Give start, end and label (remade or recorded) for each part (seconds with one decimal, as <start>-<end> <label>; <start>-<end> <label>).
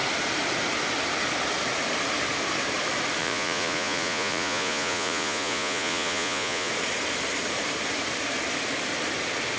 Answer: 0.0-3.2 recorded; 3.2-6.7 remade; 6.7-9.6 recorded